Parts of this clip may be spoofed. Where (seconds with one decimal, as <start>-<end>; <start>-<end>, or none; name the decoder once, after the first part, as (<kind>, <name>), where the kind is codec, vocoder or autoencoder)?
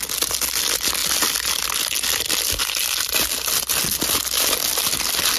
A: none